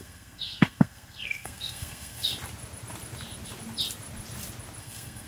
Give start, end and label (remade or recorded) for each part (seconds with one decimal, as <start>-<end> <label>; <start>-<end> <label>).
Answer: 0.0-2.3 remade; 2.3-4.8 recorded; 4.8-5.3 remade